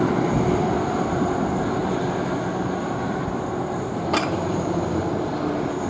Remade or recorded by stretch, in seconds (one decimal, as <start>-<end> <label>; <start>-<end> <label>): 0.0-1.8 recorded; 1.8-5.3 remade; 5.3-5.9 recorded